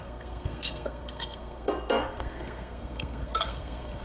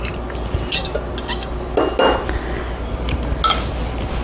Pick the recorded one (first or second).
second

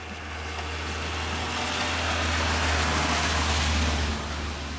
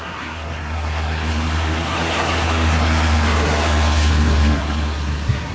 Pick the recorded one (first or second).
first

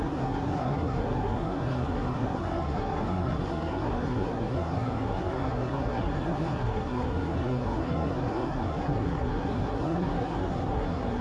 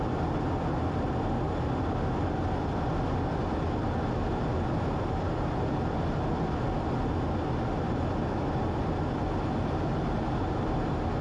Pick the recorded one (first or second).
second